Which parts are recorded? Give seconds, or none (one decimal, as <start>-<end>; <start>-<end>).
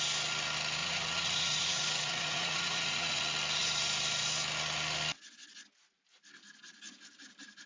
0.0-0.8; 3.2-7.7